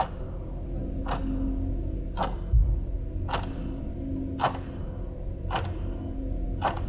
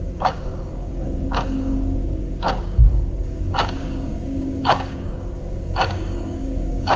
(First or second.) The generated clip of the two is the second